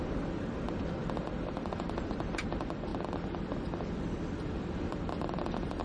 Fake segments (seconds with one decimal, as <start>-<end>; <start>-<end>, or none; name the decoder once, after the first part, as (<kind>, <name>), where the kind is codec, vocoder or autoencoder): none